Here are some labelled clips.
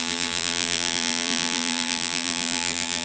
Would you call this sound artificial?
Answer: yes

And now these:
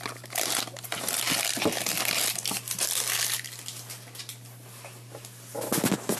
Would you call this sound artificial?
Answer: no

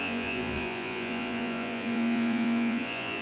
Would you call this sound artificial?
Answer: yes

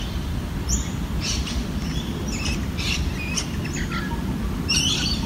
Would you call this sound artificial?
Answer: yes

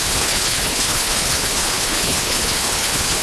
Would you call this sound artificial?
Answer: yes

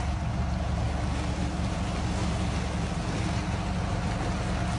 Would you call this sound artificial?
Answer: no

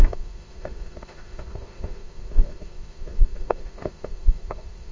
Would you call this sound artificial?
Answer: yes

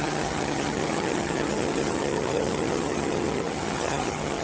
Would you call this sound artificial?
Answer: yes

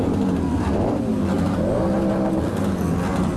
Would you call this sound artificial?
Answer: no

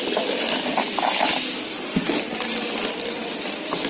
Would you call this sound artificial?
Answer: no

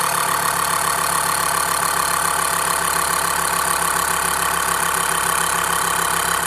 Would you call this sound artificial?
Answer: no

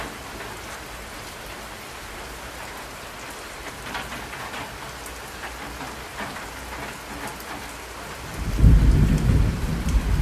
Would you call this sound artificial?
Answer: no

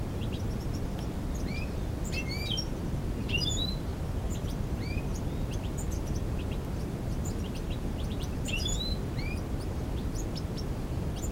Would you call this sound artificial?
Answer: yes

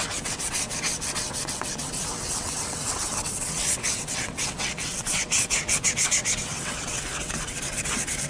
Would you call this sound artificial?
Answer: yes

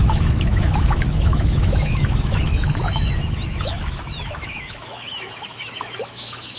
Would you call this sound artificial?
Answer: yes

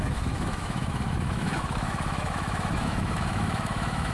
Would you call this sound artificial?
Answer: yes